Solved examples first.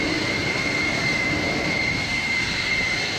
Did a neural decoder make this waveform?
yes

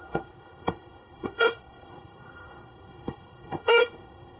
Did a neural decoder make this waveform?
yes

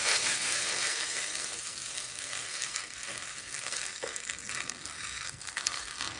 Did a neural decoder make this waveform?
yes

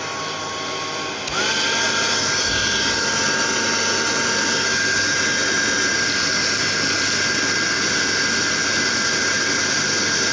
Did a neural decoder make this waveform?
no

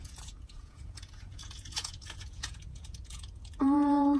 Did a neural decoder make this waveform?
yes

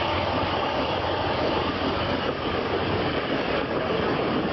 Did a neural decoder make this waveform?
yes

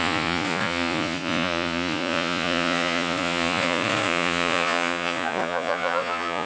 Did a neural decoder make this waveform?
yes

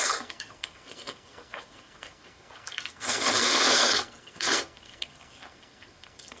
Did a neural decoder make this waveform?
yes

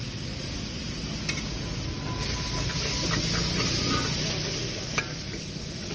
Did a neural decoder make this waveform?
no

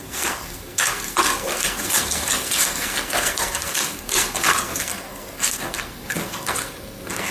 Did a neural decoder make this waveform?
yes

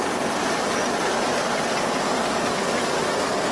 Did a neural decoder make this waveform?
no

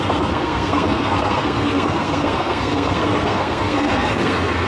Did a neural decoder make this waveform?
yes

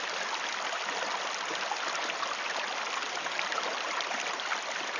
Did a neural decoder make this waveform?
no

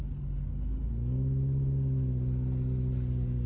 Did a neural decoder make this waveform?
no